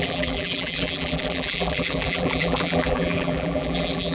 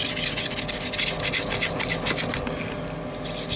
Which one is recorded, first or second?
second